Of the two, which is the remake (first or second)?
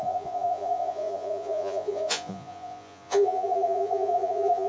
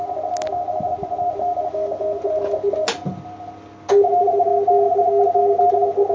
first